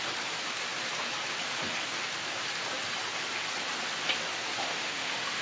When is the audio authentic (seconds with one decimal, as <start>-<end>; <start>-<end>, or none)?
0.0-4.6